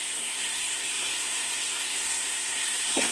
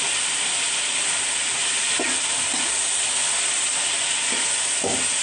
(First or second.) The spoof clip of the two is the first